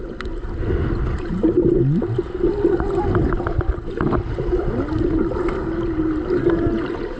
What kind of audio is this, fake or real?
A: real